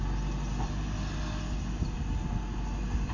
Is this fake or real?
real